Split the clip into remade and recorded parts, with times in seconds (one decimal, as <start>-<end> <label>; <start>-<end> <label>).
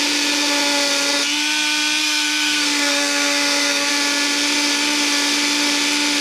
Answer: 0.0-2.0 recorded; 2.0-3.9 remade; 3.9-6.2 recorded